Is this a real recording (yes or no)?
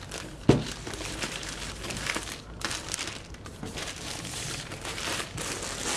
yes